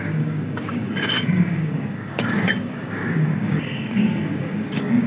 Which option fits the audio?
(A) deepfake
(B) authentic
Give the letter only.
A